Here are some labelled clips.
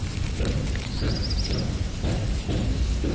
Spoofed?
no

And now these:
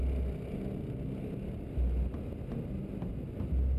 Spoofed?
no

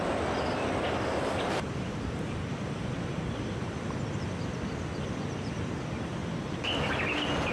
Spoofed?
yes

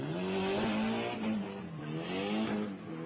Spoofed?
no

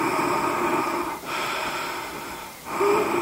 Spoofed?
no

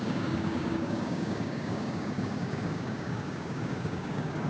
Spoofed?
yes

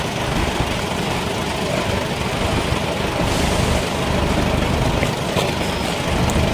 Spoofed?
no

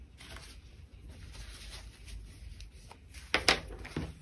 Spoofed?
no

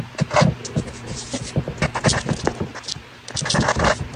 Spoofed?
no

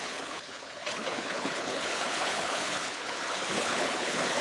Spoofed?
yes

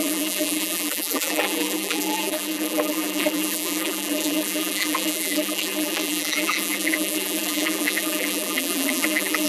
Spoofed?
yes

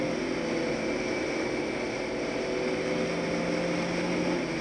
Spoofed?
no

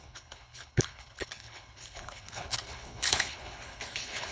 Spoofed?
yes